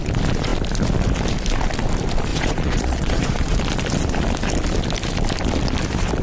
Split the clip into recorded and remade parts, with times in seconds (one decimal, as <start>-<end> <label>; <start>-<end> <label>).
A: 0.0-2.3 recorded; 2.3-3.6 remade; 3.6-6.2 recorded